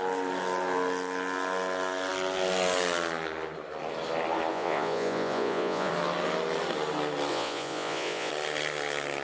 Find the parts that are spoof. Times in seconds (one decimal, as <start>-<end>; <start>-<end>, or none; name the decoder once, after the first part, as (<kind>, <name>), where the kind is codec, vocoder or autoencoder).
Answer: 4.5-5.9 (vocoder, Vocos); 7.3-8.3